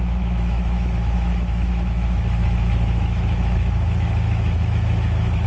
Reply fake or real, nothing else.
fake